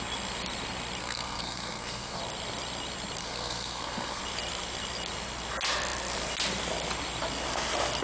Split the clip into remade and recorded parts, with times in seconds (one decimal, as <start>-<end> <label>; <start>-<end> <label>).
0.0-1.0 recorded; 1.0-2.2 remade; 2.2-3.2 recorded; 3.2-4.2 remade; 4.2-8.0 recorded